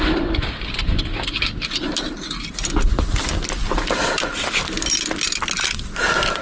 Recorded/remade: recorded